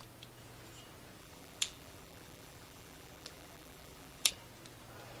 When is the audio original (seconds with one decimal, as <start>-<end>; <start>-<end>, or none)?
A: 0.0-1.2; 4.3-5.2